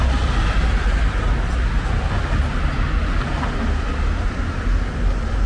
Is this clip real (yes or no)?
yes